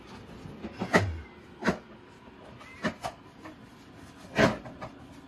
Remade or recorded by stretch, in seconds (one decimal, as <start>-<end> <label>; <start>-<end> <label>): 0.0-5.3 recorded